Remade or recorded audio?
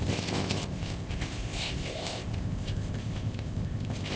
remade